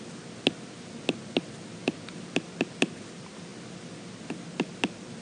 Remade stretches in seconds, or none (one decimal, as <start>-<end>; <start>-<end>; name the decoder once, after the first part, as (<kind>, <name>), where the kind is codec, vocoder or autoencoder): none